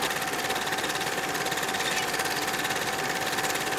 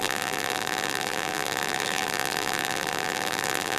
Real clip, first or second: first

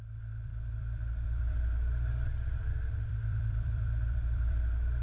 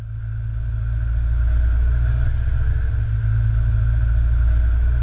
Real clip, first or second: second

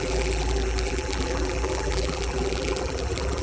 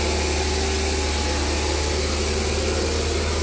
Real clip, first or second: second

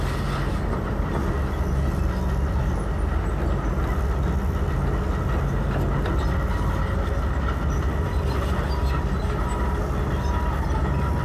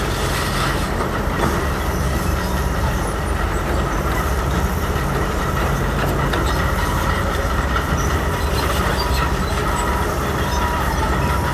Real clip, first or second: first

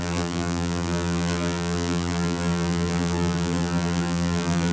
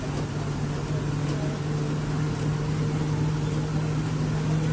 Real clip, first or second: second